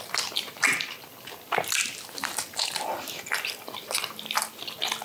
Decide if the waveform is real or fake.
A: real